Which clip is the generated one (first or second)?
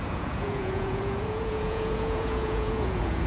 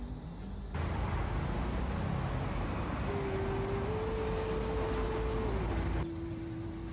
first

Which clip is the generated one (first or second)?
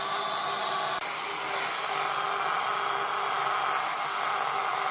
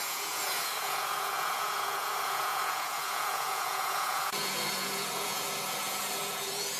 second